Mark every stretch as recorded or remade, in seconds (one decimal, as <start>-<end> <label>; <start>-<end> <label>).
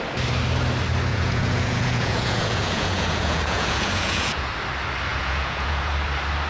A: 0.0-1.1 recorded; 1.1-4.5 remade; 4.5-5.1 recorded; 5.1-5.9 remade; 5.9-6.5 recorded